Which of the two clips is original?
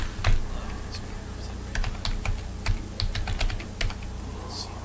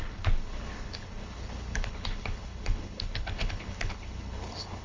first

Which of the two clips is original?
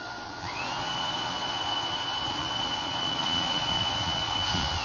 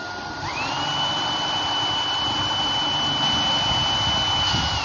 second